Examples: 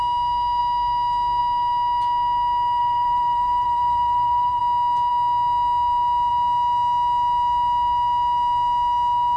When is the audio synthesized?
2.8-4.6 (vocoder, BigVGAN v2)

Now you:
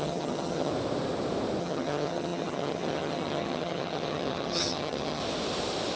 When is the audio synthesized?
0.0-0.7 (vocoder, HiFi-GAN); 1.6-5.2

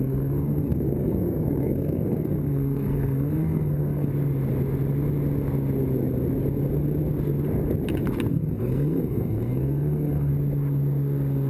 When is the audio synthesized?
0.0-4.1 (codec, SNAC); 8.3-10.3

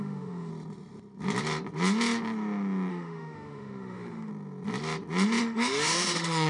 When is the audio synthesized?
0.0-0.5 (autoencoder, DAC-VAE); 2.9-4.3; 5.4-6.5

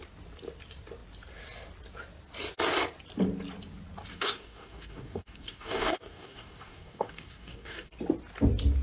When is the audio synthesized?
4.1-7.9 (codec, DAC)

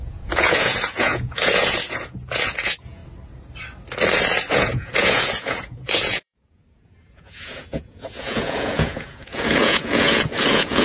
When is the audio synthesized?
0.0-3.0 (vocoder, Vocos); 4.5-10.8

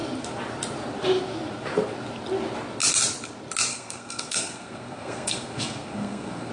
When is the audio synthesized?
3.7-6.5 (codec, SNAC)